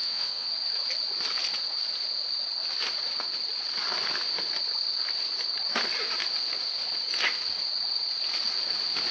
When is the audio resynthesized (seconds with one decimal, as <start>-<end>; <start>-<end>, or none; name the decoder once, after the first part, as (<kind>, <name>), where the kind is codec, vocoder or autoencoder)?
0.0-0.5 (vocoder, WaveNeXt)